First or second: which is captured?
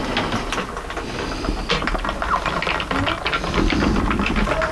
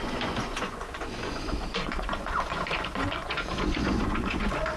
first